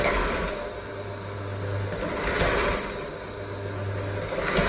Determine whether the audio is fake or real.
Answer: real